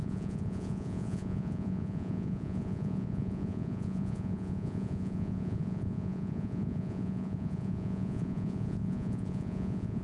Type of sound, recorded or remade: remade